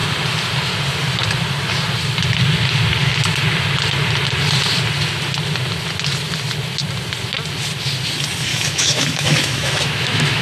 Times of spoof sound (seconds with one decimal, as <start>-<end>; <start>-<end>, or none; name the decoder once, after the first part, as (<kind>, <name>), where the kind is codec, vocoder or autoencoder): 8.5-10.4 (autoencoder, DAC-VAE)